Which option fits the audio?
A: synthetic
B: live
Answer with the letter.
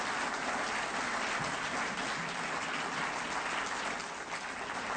B